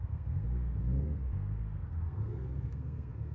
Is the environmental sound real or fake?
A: fake